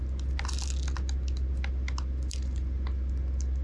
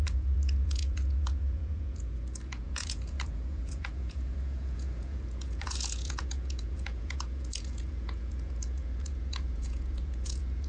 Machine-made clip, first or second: second